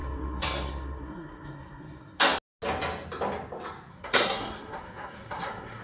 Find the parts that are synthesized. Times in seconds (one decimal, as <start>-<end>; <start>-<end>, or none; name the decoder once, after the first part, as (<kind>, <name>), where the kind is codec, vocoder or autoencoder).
0.0-2.2 (codec, SNAC); 3.9-5.8